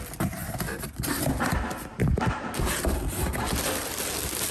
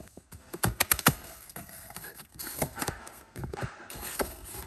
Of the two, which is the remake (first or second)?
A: second